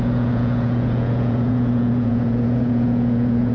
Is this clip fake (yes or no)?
yes